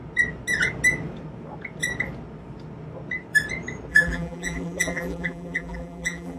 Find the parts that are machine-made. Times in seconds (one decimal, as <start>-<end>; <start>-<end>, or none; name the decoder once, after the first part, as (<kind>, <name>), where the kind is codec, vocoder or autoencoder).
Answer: 3.9-6.4 (vocoder, BigVGAN v2)